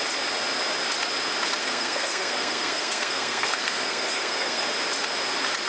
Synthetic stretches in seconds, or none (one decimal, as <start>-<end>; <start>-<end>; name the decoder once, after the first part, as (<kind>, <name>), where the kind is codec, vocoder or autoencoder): 1.6-4.6 (codec, SNAC)